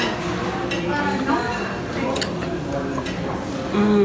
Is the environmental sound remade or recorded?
recorded